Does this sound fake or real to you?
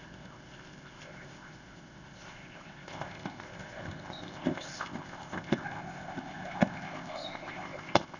fake